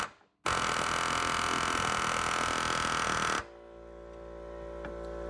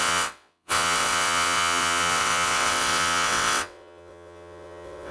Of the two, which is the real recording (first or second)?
first